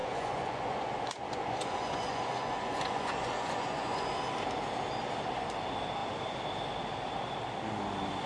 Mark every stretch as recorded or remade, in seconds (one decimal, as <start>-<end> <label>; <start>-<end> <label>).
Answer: 0.0-4.1 remade; 4.1-8.3 recorded